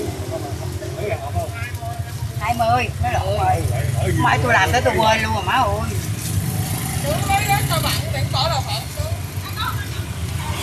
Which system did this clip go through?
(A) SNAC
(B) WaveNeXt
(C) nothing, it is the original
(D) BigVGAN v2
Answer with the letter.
C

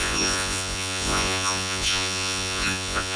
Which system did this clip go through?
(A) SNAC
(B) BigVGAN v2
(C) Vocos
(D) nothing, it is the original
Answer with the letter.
C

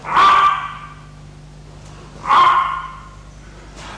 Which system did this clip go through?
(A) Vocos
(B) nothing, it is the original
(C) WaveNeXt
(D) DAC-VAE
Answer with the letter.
B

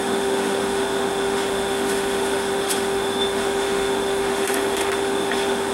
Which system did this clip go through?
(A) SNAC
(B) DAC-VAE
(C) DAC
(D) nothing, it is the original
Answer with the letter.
B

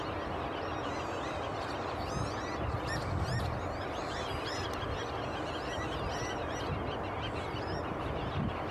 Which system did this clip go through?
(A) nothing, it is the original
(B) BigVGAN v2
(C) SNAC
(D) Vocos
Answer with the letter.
A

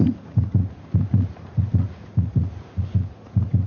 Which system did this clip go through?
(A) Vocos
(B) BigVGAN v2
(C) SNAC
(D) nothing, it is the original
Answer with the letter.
A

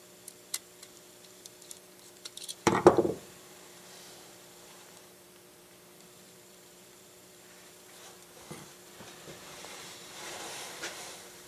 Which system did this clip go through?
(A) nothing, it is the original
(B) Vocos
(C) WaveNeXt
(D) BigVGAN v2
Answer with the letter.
D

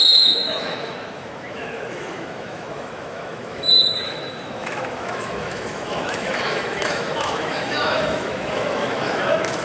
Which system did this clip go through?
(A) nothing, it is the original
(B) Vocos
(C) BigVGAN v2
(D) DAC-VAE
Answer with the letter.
D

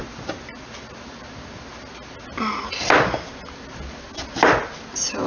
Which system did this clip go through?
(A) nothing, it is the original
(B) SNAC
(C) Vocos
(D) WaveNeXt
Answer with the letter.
A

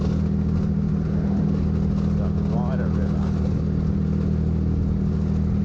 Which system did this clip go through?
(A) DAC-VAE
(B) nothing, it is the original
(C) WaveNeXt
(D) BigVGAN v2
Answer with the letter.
B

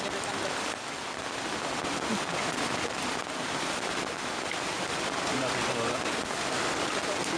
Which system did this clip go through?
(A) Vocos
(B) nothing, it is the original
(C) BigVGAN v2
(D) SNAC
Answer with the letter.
B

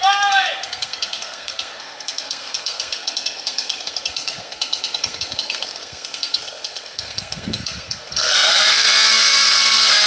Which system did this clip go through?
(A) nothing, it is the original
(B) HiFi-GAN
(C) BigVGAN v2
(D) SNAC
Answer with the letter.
D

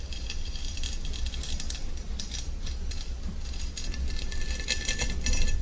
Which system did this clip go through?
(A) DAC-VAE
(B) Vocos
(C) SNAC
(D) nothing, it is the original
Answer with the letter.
D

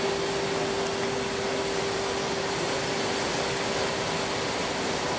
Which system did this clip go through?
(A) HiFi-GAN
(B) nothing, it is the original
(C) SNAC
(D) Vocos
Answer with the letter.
B